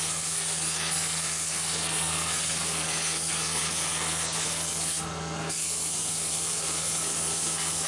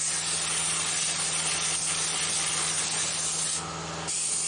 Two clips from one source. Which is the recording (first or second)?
second